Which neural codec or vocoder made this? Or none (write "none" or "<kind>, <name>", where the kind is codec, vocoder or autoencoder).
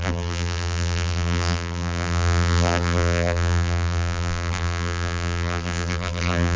vocoder, BigVGAN v2